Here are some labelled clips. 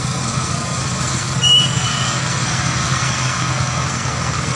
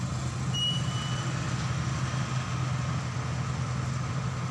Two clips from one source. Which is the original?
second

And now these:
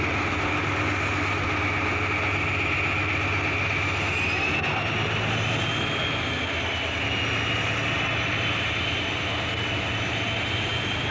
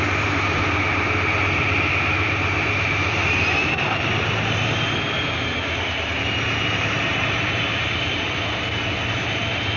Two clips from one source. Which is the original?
first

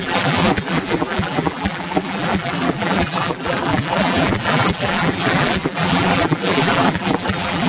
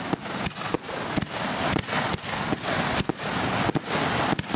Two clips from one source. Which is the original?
second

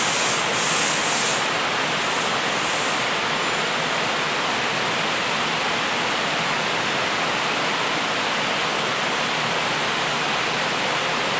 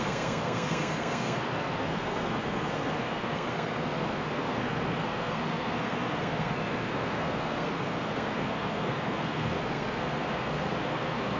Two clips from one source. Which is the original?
first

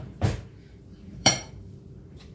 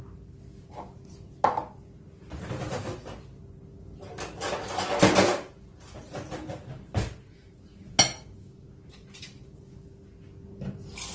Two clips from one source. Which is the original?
second